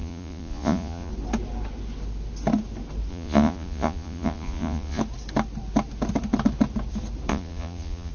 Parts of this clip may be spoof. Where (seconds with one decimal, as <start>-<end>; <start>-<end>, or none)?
0.0-1.1; 3.1-5.0; 7.3-8.1